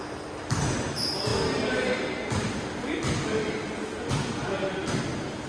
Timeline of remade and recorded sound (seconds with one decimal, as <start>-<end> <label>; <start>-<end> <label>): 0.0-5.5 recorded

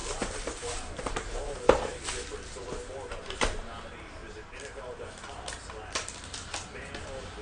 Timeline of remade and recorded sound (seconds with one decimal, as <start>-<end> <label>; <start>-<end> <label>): 0.0-2.0 remade; 2.0-4.2 recorded; 4.2-5.1 remade; 5.1-7.4 recorded

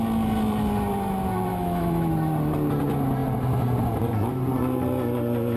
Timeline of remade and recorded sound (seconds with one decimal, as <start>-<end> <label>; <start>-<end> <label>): 0.0-1.5 recorded; 1.5-2.1 remade; 2.1-5.6 recorded

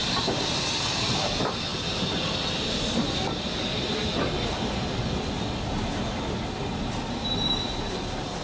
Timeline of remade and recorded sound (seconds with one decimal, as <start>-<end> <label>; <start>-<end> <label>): 0.0-8.4 recorded

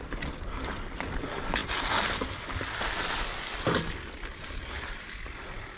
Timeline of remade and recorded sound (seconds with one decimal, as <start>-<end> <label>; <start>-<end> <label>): 0.0-5.8 recorded